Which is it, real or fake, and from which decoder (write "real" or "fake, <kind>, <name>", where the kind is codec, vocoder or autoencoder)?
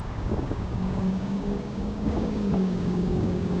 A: fake, codec, DAC